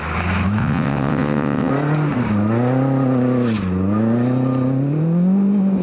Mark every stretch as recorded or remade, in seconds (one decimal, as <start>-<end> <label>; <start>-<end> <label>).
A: 0.0-0.6 recorded; 0.6-1.7 remade; 1.7-5.8 recorded